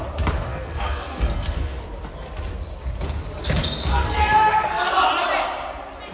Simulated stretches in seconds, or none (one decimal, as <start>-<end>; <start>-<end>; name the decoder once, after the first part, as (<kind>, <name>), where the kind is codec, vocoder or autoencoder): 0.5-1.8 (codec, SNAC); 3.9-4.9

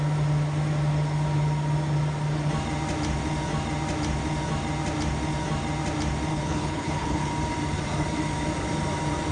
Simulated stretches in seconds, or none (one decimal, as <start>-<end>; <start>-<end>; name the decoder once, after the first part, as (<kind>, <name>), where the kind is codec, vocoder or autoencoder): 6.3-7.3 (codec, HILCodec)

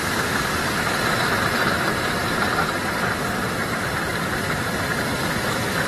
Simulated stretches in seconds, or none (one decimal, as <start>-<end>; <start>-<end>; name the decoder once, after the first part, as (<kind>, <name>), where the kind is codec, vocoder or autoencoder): none